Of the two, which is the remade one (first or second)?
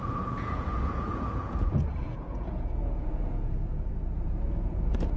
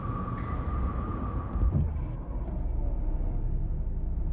first